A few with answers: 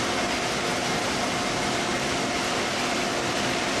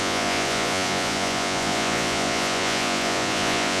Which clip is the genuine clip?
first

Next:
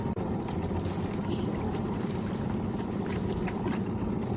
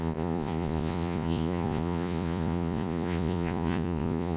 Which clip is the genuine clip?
first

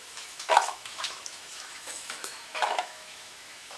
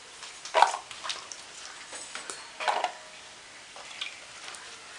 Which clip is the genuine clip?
second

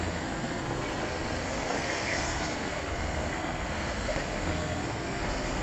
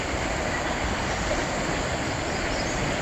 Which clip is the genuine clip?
second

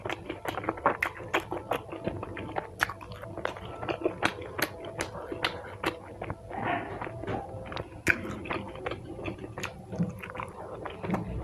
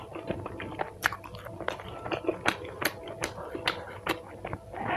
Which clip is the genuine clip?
first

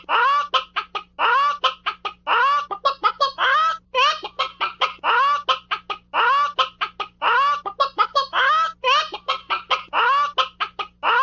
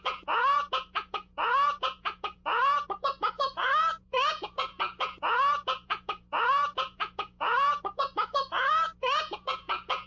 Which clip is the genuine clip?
first